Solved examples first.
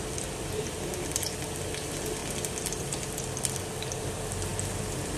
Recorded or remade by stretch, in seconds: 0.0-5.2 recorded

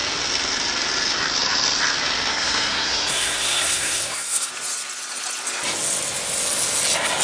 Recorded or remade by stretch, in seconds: 0.0-2.3 recorded; 2.3-4.5 remade; 4.5-7.2 recorded

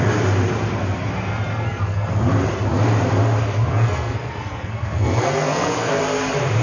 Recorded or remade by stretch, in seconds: 0.0-1.5 recorded; 1.5-2.1 remade; 2.1-3.7 recorded; 3.7-6.0 remade; 6.0-6.6 recorded

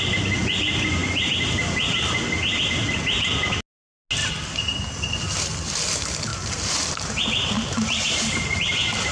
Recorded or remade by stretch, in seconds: 0.0-4.2 recorded; 4.2-4.8 remade; 4.8-6.3 recorded; 6.3-9.1 remade

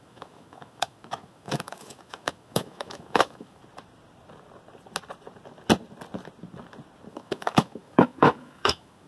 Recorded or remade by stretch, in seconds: 0.0-3.6 remade; 3.6-7.1 recorded; 7.1-9.1 remade

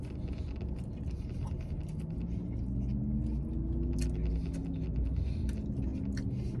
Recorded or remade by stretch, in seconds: 0.0-6.6 recorded